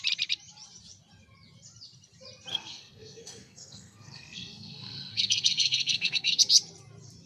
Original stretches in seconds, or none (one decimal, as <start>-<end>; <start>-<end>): 0.0-2.5; 6.4-7.3